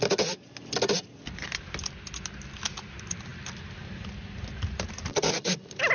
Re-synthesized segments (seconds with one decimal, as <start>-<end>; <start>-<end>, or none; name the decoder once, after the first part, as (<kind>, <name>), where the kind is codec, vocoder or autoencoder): none